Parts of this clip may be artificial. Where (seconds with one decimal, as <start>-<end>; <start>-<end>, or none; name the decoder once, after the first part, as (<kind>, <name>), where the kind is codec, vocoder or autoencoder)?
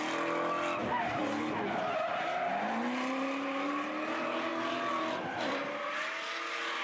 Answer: none